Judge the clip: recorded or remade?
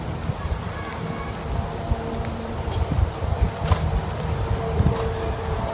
recorded